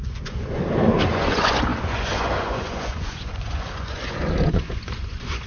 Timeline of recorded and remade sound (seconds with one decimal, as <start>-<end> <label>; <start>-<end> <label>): 0.0-0.6 remade; 0.6-1.1 recorded; 1.1-5.5 remade